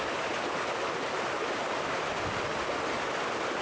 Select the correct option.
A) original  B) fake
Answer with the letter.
A